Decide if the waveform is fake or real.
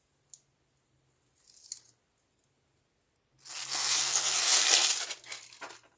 real